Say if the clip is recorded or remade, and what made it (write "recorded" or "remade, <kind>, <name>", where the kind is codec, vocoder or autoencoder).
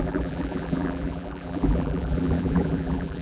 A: remade, vocoder, BigVGAN v2